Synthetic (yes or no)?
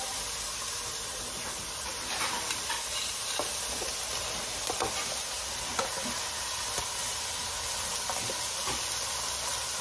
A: no